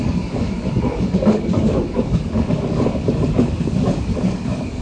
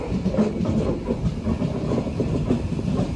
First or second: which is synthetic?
first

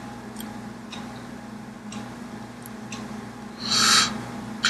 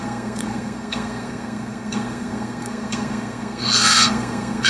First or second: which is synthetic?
second